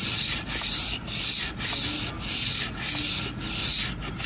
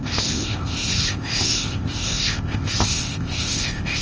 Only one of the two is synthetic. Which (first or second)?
second